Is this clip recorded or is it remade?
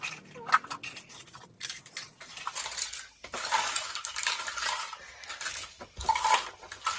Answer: recorded